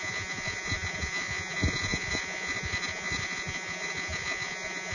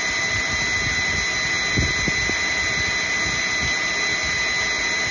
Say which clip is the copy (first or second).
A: first